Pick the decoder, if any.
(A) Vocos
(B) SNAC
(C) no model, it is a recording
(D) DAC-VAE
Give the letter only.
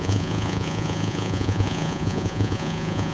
A